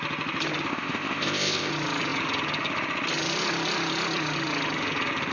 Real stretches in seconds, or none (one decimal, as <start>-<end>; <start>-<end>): 0.0-0.7; 1.7-5.3